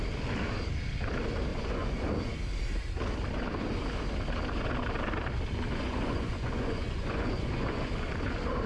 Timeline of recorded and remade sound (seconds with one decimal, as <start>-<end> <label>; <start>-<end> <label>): 0.0-1.5 recorded; 1.5-2.0 remade; 2.0-5.7 recorded; 5.7-7.9 remade; 7.9-8.7 recorded